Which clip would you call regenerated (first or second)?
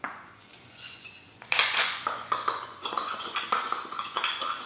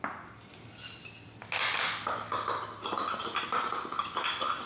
first